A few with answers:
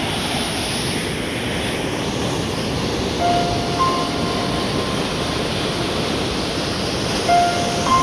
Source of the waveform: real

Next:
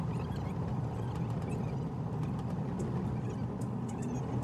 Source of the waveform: real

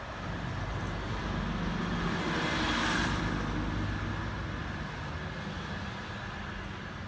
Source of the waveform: real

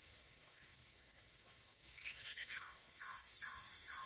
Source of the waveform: fake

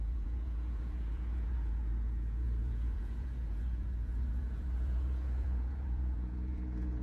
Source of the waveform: fake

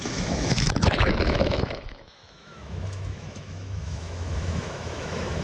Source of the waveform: fake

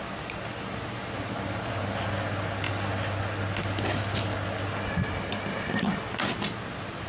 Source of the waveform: real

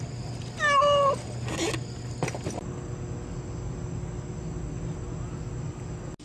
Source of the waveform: real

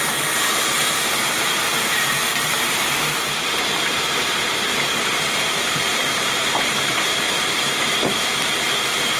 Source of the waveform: fake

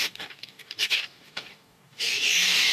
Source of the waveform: fake